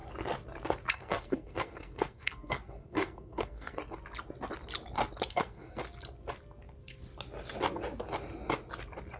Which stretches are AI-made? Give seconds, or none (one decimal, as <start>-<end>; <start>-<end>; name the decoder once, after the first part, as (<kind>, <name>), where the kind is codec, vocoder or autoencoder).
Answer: 0.9-3.8 (codec, SNAC); 5.3-5.8